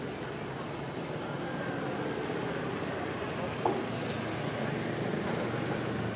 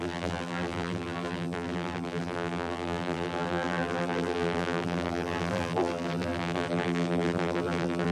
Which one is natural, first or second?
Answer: first